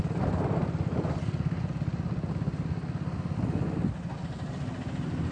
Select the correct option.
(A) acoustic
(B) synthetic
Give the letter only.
A